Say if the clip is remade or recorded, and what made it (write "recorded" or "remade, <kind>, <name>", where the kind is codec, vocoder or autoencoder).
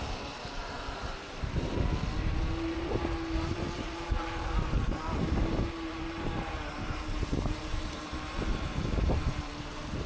remade, vocoder, BigVGAN v2